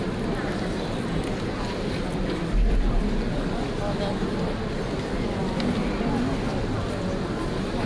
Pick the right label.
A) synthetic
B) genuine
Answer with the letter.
B